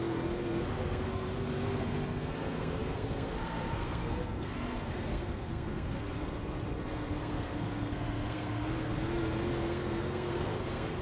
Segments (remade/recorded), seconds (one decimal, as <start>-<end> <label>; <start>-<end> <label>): 0.0-11.0 remade

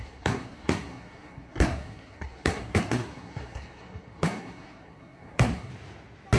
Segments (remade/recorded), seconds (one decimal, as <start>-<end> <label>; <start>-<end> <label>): 0.0-5.7 remade; 5.7-6.4 recorded

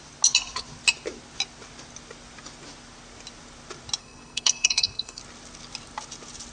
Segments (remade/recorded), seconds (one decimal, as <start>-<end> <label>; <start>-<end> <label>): 0.0-4.0 recorded; 4.0-5.2 remade; 5.2-6.5 recorded

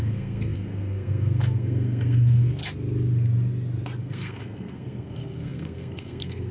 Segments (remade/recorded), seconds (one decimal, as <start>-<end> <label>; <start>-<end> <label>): 0.0-2.6 remade; 2.6-4.0 recorded; 4.0-6.5 remade

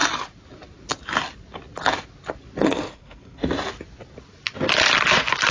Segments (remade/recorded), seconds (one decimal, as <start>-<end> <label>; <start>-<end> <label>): 0.0-2.6 recorded; 2.6-3.4 remade; 3.4-5.5 recorded

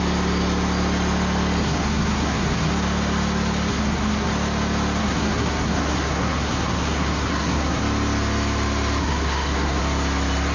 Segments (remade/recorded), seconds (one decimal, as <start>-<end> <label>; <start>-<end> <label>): 0.0-1.6 recorded; 1.6-2.7 remade; 2.7-3.7 recorded; 3.7-4.3 remade; 4.3-5.0 recorded; 5.0-7.8 remade; 7.8-9.0 recorded; 9.0-9.8 remade; 9.8-10.5 recorded